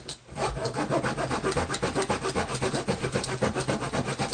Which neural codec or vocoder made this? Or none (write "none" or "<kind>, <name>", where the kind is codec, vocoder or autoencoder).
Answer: none